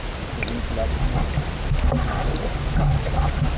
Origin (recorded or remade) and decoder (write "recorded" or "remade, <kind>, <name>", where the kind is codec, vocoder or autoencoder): recorded